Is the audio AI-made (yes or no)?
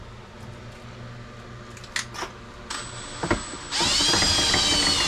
no